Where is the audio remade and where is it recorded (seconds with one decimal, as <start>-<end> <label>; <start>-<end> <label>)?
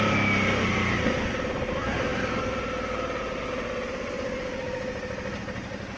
0.0-6.0 recorded